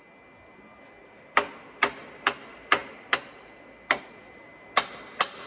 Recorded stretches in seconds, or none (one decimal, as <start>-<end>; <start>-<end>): 0.0-1.0; 2.0-5.5

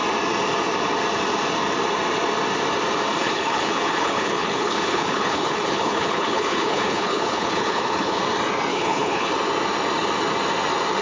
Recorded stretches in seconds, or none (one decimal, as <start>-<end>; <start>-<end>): 0.0-3.2; 8.2-8.7; 9.3-11.0

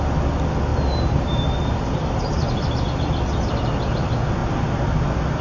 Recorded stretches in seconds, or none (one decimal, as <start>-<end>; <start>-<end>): 0.0-0.7; 2.5-5.4

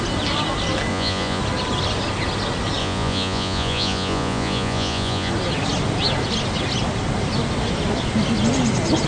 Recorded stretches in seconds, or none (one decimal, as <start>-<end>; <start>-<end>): 0.0-0.9; 1.4-2.8; 5.3-9.1

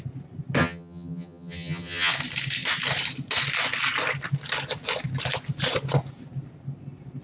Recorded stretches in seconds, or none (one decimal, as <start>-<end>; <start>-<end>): 0.0-0.6; 2.1-7.2

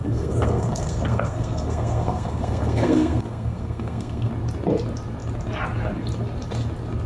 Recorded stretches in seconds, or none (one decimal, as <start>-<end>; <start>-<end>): 4.3-7.1

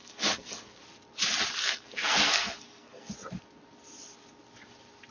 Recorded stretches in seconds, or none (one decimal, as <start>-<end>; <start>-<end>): 0.8-1.6; 3.1-5.1